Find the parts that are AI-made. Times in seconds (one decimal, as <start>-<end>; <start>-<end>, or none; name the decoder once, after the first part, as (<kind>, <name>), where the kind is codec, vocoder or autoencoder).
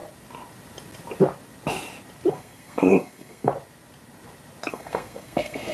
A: 2.3-3.5 (codec, SNAC); 4.7-5.7